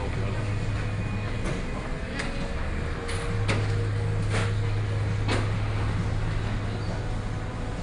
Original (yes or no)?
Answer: yes